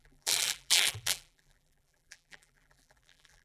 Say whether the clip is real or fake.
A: fake